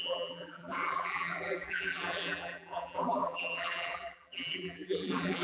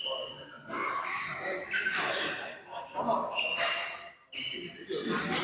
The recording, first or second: second